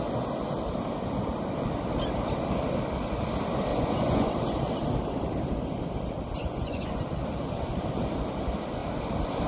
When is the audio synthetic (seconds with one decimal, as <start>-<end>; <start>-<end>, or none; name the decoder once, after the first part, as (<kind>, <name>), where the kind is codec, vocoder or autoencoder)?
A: 3.7-4.3 (vocoder, Vocos); 6.4-7.0